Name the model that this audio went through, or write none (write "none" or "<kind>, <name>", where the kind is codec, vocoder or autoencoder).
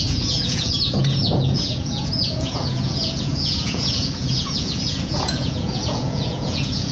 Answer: vocoder, Vocos